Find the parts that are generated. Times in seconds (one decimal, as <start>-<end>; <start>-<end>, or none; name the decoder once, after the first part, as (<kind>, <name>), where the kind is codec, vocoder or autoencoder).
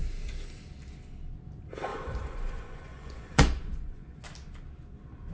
1.9-4.2 (vocoder, Vocos)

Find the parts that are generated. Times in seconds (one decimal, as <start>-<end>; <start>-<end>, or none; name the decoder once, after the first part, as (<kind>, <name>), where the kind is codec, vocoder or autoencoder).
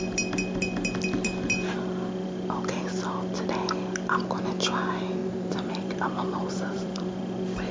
5.2-7.2 (vocoder, BigVGAN v2)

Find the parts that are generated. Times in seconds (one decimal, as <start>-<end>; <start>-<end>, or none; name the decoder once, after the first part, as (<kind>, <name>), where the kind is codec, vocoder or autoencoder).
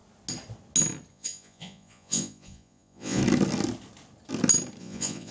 1.1-3.2 (vocoder, Vocos); 4.8-5.3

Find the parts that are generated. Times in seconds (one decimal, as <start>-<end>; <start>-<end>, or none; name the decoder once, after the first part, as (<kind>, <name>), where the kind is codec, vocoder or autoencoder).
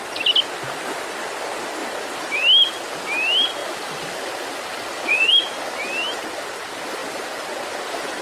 1.8-2.4 (vocoder, BigVGAN v2); 3.6-5.3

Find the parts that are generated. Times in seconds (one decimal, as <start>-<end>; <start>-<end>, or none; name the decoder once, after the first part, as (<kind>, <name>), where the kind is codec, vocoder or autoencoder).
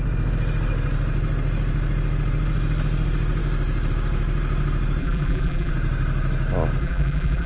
5.0-5.7 (vocoder, BigVGAN v2); 6.8-7.5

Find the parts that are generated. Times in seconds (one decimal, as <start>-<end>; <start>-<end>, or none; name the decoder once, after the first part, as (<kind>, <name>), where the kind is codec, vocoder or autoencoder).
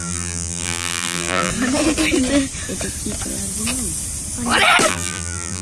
0.0-1.5 (vocoder, BigVGAN v2); 4.9-5.6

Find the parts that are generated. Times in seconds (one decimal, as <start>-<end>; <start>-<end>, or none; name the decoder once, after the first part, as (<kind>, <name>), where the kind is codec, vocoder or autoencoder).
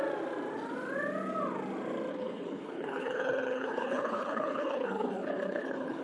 2.1-6.0 (codec, HILCodec)